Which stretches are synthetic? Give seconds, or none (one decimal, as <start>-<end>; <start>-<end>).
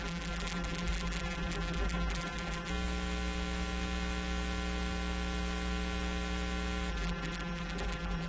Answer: 0.0-2.7; 6.9-8.3